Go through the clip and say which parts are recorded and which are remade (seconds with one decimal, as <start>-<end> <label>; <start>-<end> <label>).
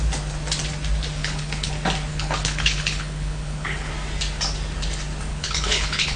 0.0-1.2 recorded; 1.2-1.7 remade; 1.7-2.1 recorded; 2.1-3.9 remade; 3.9-5.3 recorded; 5.3-6.2 remade